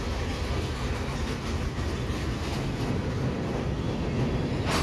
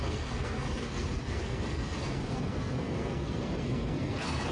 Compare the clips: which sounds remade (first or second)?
second